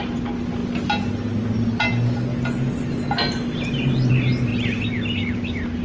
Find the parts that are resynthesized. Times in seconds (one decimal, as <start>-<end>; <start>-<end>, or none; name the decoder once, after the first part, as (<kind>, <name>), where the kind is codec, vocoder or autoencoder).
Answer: none